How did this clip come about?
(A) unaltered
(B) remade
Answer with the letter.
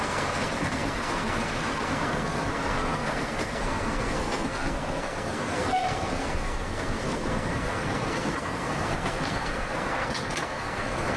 B